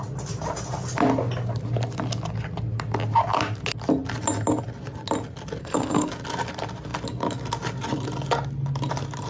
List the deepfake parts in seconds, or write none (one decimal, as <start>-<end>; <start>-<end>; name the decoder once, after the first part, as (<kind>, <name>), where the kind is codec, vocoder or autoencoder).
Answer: 5.6-6.1 (codec, SNAC)